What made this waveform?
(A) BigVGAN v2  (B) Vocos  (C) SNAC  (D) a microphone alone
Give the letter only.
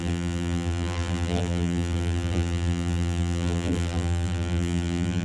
A